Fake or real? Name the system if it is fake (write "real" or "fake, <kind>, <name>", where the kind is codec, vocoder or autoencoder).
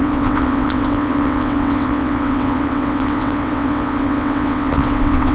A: fake, vocoder, WaveNeXt